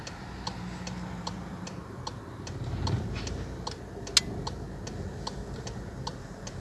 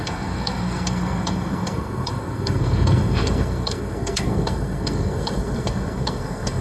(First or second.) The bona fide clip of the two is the first